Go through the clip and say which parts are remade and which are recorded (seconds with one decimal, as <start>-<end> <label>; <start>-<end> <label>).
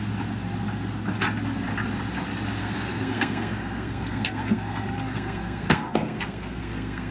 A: 0.0-2.6 recorded; 2.6-7.1 remade